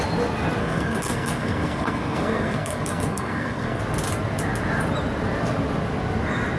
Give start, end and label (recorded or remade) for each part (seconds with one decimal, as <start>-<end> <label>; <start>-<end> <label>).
0.0-0.6 recorded; 0.6-3.8 remade; 3.8-6.6 recorded